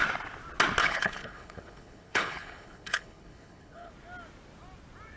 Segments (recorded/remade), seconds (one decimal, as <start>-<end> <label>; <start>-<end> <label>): 0.0-0.8 recorded; 0.8-3.9 remade; 3.9-5.2 recorded